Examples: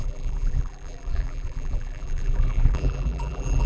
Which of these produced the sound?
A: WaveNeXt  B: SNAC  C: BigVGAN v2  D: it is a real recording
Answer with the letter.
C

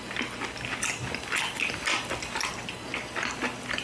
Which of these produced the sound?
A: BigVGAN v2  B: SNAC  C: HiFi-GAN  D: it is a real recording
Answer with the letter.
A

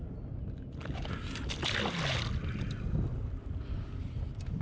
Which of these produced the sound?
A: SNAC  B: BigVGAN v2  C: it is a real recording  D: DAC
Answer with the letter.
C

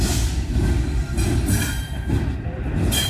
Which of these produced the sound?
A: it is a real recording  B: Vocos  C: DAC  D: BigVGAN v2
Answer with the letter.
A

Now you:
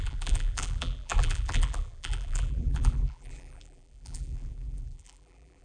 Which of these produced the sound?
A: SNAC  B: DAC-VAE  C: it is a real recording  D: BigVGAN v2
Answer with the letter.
D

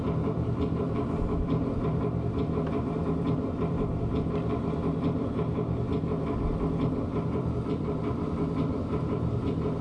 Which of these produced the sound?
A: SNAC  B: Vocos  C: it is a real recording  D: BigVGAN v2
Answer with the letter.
D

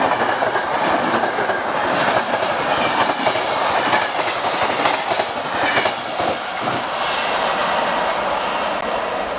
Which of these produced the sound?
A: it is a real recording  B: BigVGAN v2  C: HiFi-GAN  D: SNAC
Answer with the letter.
A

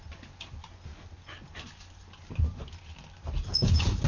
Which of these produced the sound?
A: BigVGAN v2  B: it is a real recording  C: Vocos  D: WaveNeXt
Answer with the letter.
B